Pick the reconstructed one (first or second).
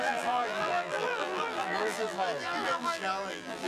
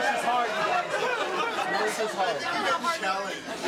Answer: first